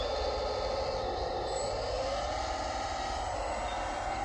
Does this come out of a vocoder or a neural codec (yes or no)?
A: no